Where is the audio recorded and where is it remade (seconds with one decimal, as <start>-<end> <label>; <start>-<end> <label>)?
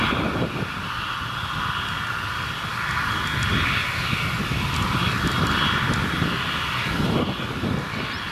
0.0-8.3 recorded